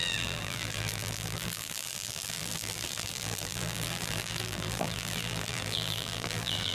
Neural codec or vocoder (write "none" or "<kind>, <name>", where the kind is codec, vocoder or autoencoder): vocoder, BigVGAN v2